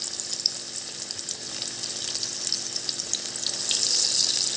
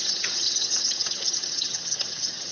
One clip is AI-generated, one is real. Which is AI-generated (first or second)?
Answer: second